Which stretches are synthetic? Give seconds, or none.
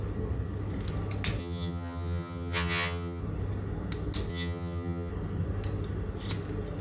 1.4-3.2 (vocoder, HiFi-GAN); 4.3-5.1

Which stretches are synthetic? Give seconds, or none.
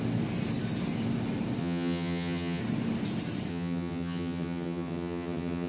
1.6-2.6 (vocoder, HiFi-GAN); 3.5-5.7